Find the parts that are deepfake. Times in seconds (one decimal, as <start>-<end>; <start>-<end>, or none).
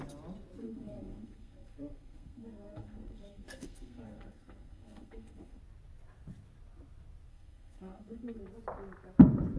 0.6-5.6; 7.3-8.4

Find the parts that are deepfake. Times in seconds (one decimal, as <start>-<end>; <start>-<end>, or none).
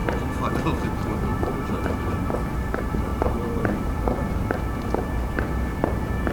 1.3-2.3; 3.1-4.0